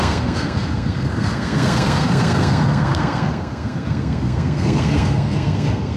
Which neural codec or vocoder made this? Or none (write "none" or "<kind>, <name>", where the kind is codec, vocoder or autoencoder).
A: codec, SNAC